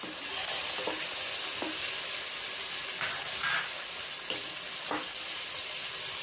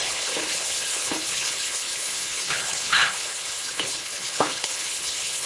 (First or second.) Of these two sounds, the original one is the first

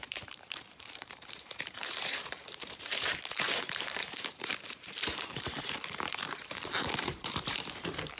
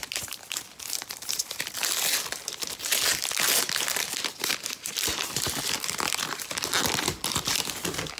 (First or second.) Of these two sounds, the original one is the second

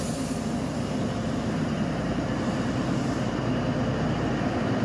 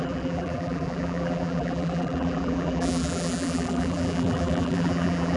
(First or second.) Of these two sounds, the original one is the first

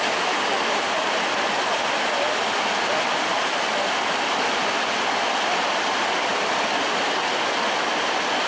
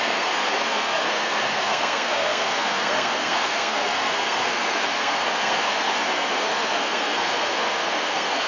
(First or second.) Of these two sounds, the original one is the first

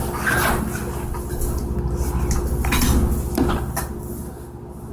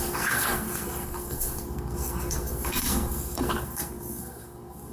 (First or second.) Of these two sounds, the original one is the first